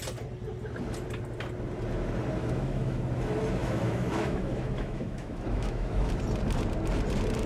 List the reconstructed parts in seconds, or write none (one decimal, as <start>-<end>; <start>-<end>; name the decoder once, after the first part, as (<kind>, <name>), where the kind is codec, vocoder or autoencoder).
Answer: 2.4-3.0 (autoencoder, DAC-VAE); 3.6-6.1